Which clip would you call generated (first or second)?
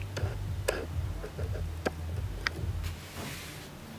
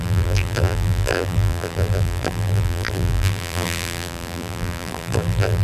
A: second